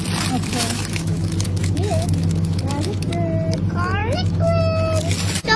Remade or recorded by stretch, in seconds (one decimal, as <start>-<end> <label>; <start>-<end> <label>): 0.0-0.5 recorded; 0.5-3.1 remade; 3.1-4.0 recorded; 4.0-4.6 remade; 4.6-5.6 recorded